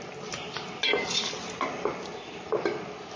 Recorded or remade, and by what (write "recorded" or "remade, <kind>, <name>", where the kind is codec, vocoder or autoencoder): recorded